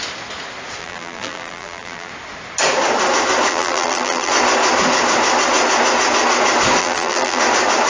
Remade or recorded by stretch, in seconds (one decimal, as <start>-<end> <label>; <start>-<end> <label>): 0.0-0.8 recorded; 0.8-2.1 remade; 2.1-3.5 recorded; 3.5-4.3 remade; 4.3-6.8 recorded; 6.8-7.4 remade; 7.4-7.9 recorded